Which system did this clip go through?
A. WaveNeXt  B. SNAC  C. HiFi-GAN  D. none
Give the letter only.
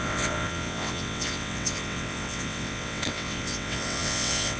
A